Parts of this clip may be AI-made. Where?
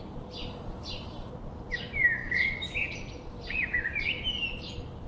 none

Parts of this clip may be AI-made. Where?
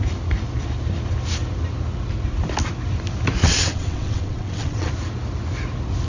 3.4-4.9 (vocoder, WaveNeXt)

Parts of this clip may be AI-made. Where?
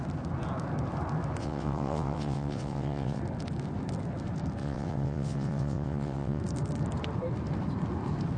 1.4-3.2 (vocoder, WaveNeXt); 4.6-6.4